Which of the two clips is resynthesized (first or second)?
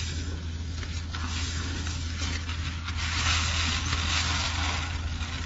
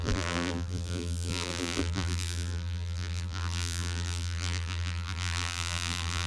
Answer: second